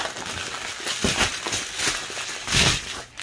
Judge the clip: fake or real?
real